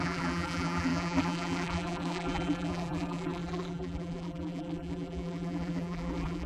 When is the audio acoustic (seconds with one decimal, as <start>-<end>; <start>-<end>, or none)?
none